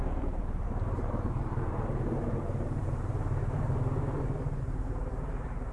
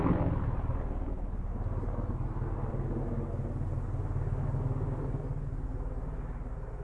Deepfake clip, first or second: first